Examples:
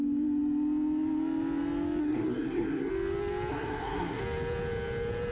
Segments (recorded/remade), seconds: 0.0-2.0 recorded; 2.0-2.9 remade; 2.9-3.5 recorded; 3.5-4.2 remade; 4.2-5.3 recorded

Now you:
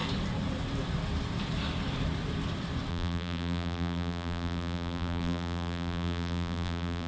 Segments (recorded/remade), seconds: 0.0-2.9 recorded; 2.9-7.1 remade

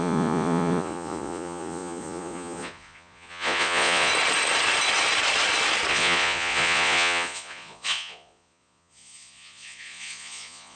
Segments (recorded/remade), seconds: 0.0-4.1 remade; 4.1-5.9 recorded; 5.9-10.7 remade

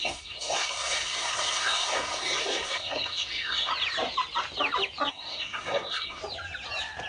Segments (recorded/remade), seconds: 0.0-3.7 remade; 3.7-5.1 recorded; 5.1-6.2 remade; 6.2-7.1 recorded

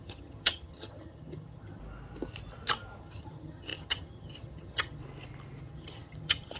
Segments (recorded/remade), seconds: 0.0-1.8 remade; 1.8-3.0 recorded; 3.0-5.0 remade; 5.0-5.6 recorded; 5.6-6.6 remade

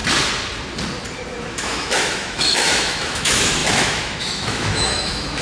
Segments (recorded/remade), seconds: 0.0-1.5 recorded; 1.5-5.4 remade